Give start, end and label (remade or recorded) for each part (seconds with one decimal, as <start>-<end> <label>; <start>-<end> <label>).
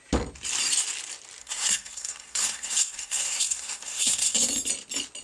0.0-1.4 recorded; 1.4-4.5 remade; 4.5-5.2 recorded